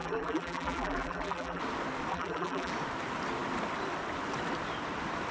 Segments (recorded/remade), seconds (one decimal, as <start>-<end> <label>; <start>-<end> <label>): 0.0-1.6 remade; 1.6-2.1 recorded; 2.1-2.7 remade; 2.7-5.3 recorded